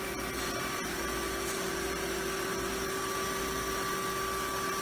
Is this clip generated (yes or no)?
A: no